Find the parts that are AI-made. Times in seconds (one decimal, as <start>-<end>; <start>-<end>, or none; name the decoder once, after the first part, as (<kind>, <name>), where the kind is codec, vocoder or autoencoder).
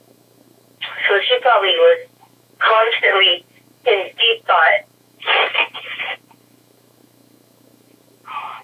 0.0-8.6 (autoencoder, DAC-VAE)